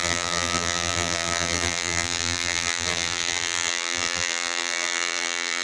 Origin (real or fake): fake